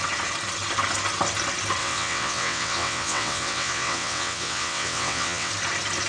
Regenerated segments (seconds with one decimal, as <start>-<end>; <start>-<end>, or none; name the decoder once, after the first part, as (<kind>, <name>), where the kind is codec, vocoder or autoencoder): 1.8-5.5 (vocoder, WaveNeXt)